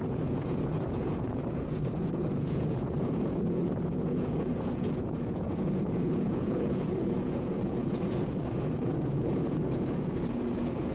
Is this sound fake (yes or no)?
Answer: yes